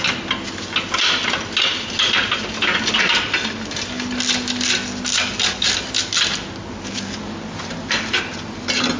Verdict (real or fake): real